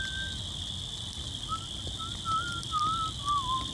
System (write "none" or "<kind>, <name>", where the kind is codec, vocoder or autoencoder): none